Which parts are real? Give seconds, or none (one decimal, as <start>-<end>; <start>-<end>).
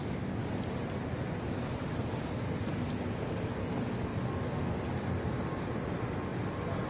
0.0-6.9